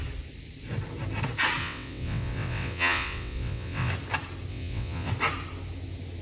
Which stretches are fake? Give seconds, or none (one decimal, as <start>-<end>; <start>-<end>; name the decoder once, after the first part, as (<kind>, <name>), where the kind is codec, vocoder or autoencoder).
1.6-3.9 (vocoder, WaveNeXt); 4.5-5.1